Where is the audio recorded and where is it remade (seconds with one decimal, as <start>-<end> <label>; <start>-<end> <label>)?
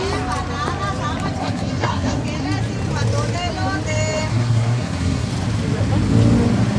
0.0-1.4 recorded; 1.4-2.2 remade; 2.2-4.3 recorded; 4.3-5.3 remade; 5.3-6.8 recorded